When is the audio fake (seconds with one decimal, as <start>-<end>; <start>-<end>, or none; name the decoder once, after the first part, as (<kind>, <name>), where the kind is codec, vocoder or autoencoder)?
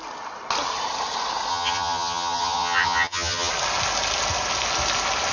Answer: 1.5-3.5 (vocoder, HiFi-GAN)